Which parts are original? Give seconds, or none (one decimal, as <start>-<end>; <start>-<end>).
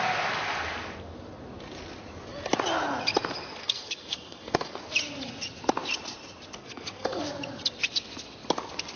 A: 0.0-3.6; 4.8-6.6; 7.2-9.0